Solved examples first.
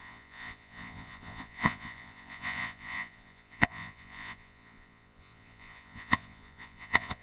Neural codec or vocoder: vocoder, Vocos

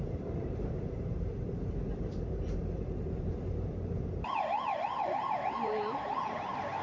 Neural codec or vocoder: vocoder, BigVGAN v2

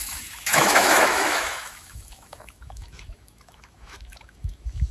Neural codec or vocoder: autoencoder, DAC-VAE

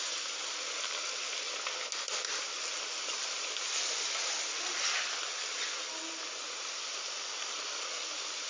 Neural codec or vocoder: none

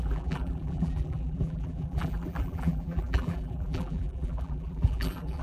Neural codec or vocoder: vocoder, BigVGAN v2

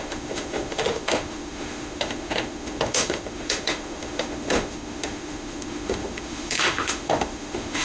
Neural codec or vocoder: autoencoder, DAC-VAE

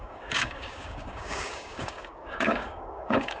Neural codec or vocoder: codec, DAC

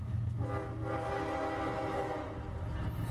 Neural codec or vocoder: none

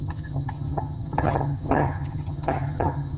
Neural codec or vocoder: vocoder, HiFi-GAN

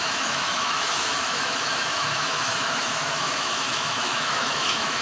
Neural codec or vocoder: autoencoder, DAC-VAE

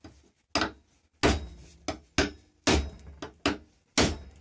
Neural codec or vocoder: none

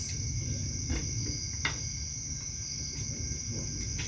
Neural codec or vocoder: none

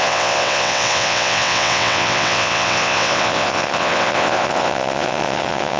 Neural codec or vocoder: vocoder, WaveNeXt